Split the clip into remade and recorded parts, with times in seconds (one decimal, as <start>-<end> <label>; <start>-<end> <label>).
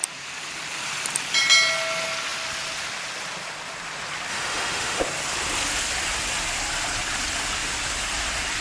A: 0.0-4.3 recorded; 4.3-5.0 remade; 5.0-8.6 recorded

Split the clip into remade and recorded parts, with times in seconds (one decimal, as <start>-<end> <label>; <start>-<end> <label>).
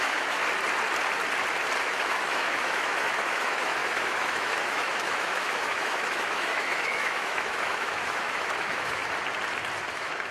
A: 0.0-0.4 remade; 0.4-1.8 recorded; 1.8-9.0 remade; 9.0-9.9 recorded; 9.9-10.3 remade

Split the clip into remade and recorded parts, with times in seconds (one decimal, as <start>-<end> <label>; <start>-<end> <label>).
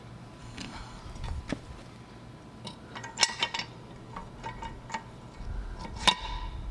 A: 0.0-0.4 recorded; 0.4-1.0 remade; 1.0-6.7 recorded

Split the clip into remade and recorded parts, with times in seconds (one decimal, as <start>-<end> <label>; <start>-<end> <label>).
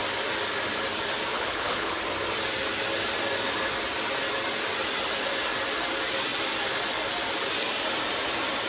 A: 0.0-1.3 recorded; 1.3-2.0 remade; 2.0-8.7 recorded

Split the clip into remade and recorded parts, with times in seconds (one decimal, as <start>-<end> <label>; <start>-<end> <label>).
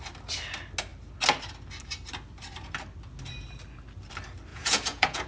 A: 0.0-4.5 recorded; 4.5-5.3 remade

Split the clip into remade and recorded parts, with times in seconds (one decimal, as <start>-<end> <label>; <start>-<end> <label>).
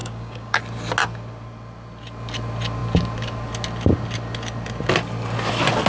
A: 0.0-0.6 remade; 0.6-5.9 recorded